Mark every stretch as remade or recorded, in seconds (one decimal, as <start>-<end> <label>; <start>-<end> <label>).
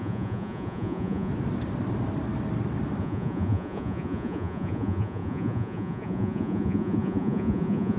0.0-1.3 remade; 1.3-3.0 recorded; 3.0-8.0 remade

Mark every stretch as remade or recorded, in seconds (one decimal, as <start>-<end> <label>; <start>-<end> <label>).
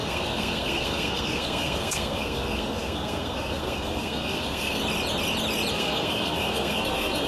0.0-4.8 remade; 4.8-5.7 recorded; 5.7-7.3 remade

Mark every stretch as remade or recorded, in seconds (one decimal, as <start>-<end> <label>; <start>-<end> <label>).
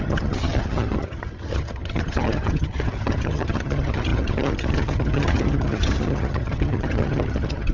0.0-7.7 remade